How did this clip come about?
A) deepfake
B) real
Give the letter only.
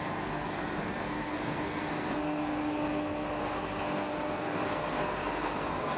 A